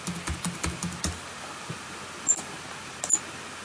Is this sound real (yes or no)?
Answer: yes